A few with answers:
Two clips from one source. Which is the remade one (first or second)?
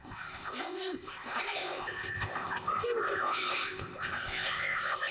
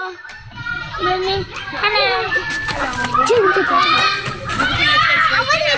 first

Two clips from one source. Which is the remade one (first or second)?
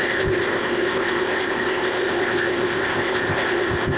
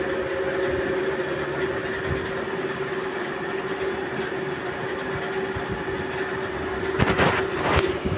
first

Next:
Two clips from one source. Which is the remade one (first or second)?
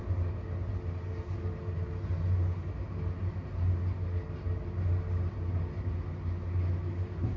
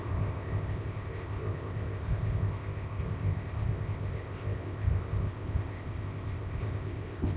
second